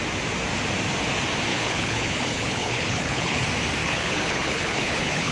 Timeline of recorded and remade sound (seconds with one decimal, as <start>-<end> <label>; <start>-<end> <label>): 0.0-1.5 recorded; 1.5-3.4 remade; 3.4-3.8 recorded; 3.8-5.3 remade